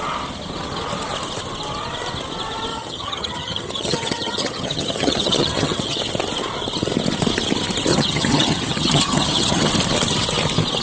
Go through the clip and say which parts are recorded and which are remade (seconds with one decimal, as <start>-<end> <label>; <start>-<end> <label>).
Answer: 0.0-2.7 recorded; 2.7-6.0 remade; 6.0-7.9 recorded; 7.9-9.7 remade; 9.7-10.8 recorded